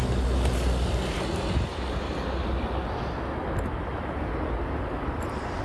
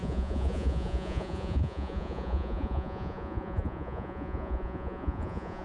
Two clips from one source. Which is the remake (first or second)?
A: second